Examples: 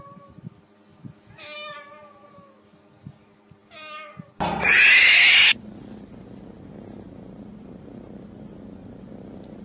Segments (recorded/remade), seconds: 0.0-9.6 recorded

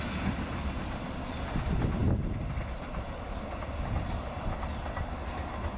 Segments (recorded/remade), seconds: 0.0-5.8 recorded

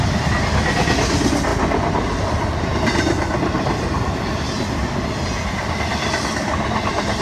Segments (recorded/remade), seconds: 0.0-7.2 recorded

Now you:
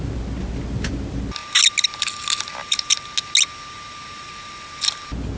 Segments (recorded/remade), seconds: 0.0-5.4 recorded